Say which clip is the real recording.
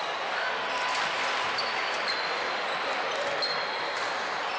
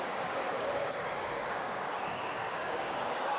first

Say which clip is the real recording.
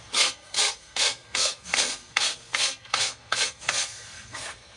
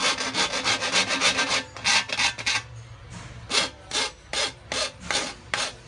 second